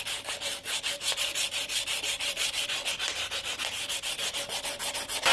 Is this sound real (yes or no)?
yes